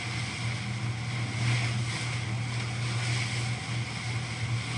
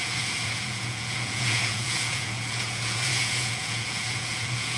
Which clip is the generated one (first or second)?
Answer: second